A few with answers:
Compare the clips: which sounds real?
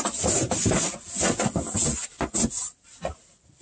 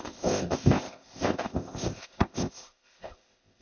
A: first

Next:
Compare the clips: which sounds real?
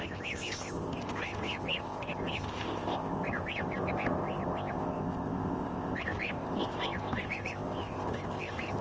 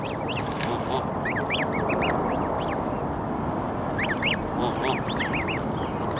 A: second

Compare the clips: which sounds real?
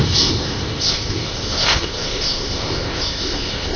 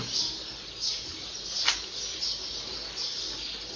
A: second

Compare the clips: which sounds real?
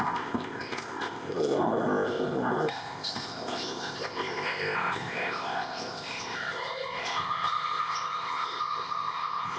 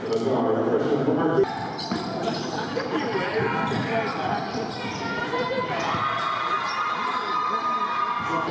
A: second